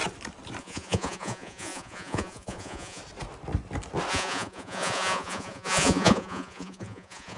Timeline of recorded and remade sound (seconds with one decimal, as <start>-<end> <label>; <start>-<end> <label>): 0.0-0.6 recorded; 0.6-3.0 remade; 3.0-4.1 recorded; 4.1-7.4 remade